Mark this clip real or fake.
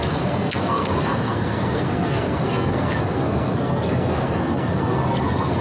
fake